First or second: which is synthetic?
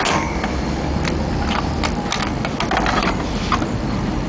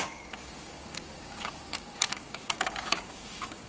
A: second